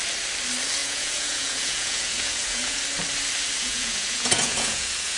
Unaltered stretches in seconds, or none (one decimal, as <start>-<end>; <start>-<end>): 0.0-0.8; 2.8-3.6